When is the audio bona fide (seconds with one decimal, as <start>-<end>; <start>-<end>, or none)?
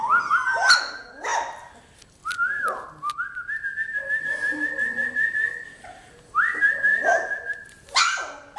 0.0-6.9; 7.6-8.6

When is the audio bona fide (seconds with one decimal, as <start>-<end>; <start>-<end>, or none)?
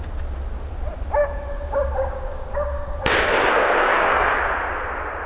0.0-1.2; 4.4-5.3